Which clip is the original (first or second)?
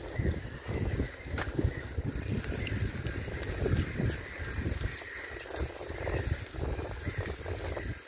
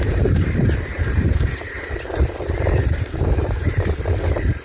first